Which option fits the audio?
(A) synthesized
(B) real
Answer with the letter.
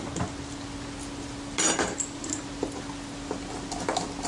B